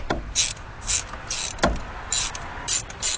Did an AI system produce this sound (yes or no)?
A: no